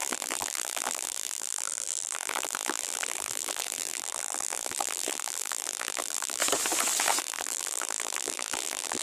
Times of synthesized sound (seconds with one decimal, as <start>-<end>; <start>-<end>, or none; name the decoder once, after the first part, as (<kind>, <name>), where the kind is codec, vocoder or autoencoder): 0.0-6.4 (vocoder, BigVGAN v2); 7.2-9.0